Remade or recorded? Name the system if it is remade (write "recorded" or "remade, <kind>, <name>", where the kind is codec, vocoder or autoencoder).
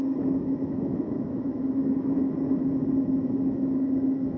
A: remade, autoencoder, DAC-VAE